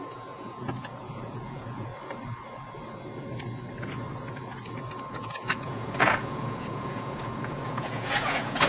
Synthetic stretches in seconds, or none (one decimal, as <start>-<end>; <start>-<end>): 0.0-1.9; 5.1-8.7